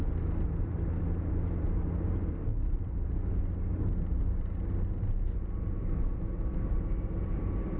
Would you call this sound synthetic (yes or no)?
no